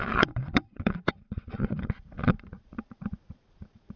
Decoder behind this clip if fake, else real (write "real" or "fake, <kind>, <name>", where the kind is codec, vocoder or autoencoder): fake, vocoder, Vocos